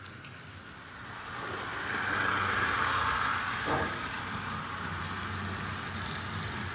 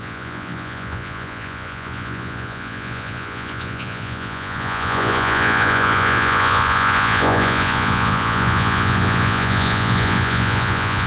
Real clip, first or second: first